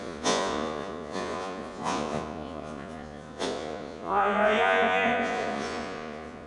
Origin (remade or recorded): remade